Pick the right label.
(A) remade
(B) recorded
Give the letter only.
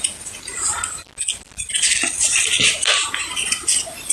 B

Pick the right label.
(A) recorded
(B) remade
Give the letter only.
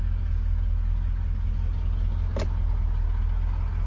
A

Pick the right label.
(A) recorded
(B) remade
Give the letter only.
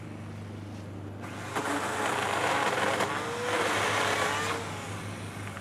A